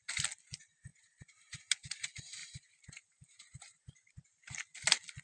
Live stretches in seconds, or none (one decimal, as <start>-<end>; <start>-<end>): 0.0-0.9; 1.6-2.4; 4.1-5.2